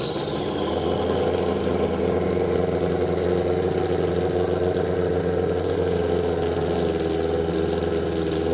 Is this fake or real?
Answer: real